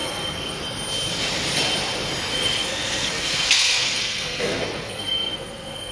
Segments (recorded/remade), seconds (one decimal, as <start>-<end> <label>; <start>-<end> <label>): 0.0-0.6 remade; 0.6-2.3 recorded; 2.3-5.9 remade